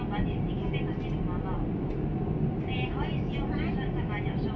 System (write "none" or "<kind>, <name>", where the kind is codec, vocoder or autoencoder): none